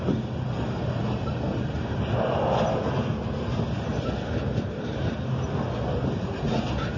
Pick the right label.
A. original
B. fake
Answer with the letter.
A